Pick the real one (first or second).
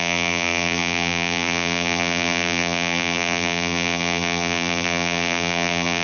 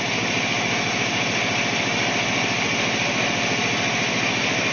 second